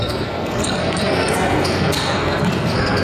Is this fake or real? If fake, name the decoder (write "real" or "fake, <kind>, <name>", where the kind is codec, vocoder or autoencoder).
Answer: fake, codec, SNAC